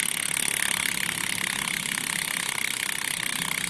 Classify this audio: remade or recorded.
recorded